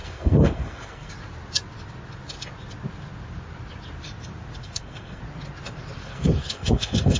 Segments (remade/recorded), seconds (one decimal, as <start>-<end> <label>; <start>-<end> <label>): 0.0-1.1 remade; 1.1-4.6 recorded; 4.6-5.2 remade; 5.2-6.0 recorded; 6.0-7.2 remade